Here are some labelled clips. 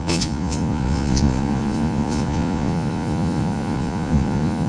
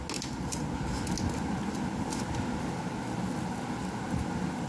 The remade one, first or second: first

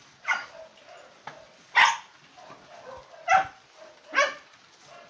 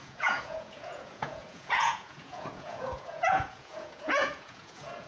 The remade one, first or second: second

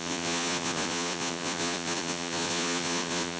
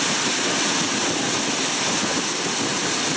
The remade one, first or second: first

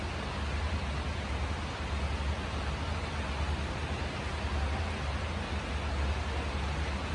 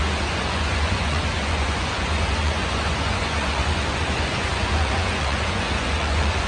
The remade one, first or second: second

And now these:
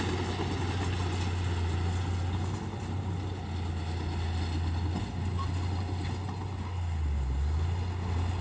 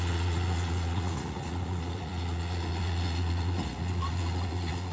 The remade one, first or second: second